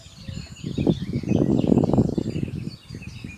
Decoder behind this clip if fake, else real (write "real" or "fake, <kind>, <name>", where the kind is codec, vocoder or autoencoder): real